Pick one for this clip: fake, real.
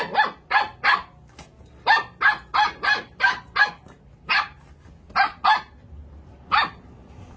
real